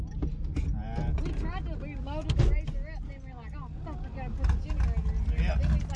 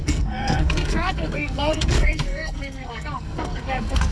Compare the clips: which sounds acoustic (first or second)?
first